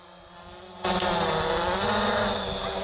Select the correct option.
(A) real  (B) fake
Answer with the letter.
A